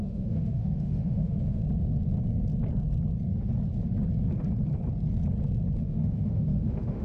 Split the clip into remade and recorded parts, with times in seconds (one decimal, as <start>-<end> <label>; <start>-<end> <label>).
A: 0.0-1.6 remade; 1.6-5.8 recorded; 5.8-7.0 remade

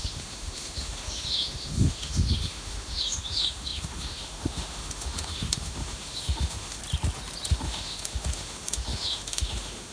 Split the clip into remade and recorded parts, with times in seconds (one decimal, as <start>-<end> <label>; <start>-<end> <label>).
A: 0.0-6.8 remade; 6.8-7.5 recorded; 7.5-9.9 remade

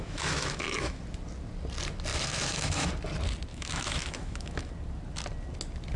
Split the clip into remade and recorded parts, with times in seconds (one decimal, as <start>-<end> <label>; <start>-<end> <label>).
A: 0.0-1.0 remade; 1.0-2.1 recorded; 2.1-2.9 remade; 2.9-3.5 recorded; 3.5-4.7 remade; 4.7-6.0 recorded

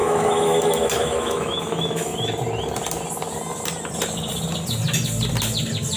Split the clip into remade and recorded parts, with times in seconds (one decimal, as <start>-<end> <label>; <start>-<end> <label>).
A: 0.0-2.1 remade; 2.1-6.0 recorded

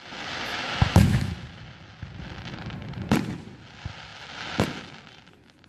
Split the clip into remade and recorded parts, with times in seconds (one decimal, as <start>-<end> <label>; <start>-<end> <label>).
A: 0.0-0.5 recorded; 0.5-1.3 remade; 1.3-5.7 recorded

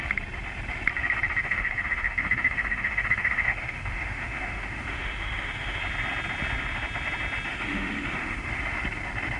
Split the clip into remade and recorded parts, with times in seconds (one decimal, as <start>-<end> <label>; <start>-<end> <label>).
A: 0.0-1.4 recorded; 1.4-5.8 remade; 5.8-7.5 recorded; 7.5-8.6 remade; 8.6-9.4 recorded

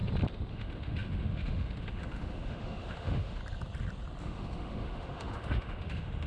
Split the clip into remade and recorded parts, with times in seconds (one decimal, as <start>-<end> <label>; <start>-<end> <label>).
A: 0.0-0.5 recorded; 0.5-3.4 remade; 3.4-4.2 recorded; 4.2-6.3 remade